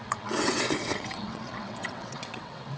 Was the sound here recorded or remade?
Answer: remade